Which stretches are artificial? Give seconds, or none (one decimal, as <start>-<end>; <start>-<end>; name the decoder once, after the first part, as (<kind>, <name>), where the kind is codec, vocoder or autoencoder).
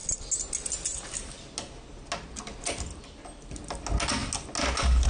none